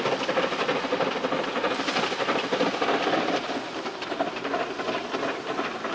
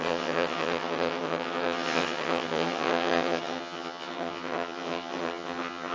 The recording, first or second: first